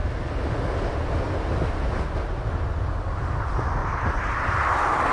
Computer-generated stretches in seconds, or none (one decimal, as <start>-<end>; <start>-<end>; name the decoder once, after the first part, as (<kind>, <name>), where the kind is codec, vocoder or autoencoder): 3.8-4.6 (vocoder, BigVGAN v2)